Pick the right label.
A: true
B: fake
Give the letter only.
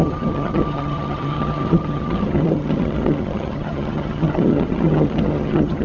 B